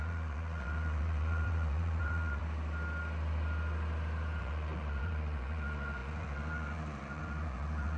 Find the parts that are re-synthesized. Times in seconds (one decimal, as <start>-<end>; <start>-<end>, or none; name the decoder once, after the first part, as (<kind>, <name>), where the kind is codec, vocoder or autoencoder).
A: 0.0-2.4 (vocoder, Vocos); 4.4-8.0